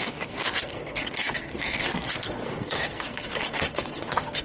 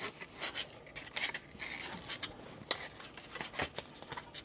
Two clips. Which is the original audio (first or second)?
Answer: second